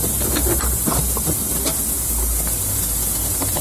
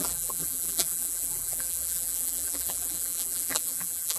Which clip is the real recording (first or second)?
first